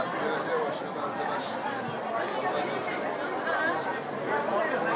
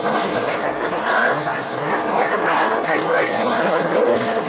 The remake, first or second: second